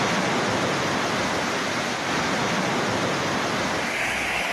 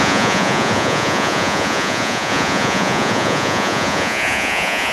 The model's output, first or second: second